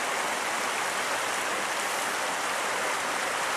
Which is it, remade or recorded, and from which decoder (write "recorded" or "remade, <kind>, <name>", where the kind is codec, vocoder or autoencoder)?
recorded